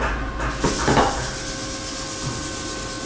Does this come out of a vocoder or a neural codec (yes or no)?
no